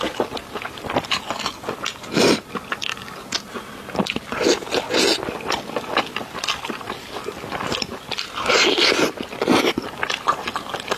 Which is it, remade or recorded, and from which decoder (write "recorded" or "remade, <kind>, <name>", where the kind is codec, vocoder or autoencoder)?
recorded